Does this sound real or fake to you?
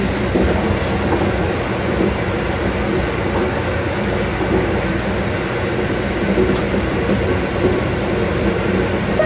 real